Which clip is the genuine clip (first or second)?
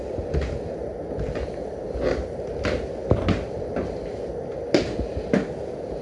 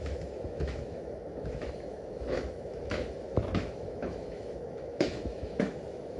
first